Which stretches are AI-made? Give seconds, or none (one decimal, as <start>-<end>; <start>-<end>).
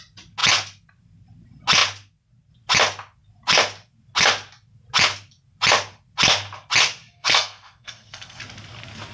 7.1-8.4